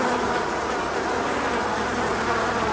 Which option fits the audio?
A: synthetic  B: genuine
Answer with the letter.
B